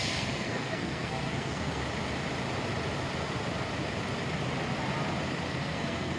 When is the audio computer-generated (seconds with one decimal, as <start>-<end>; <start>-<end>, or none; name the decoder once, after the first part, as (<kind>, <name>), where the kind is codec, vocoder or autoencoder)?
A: 0.0-1.8 (codec, SNAC); 5.5-6.2